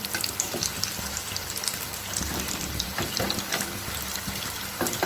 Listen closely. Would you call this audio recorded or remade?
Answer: remade